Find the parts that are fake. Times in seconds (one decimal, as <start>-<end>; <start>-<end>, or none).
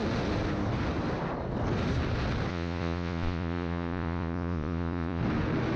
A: 2.5-5.2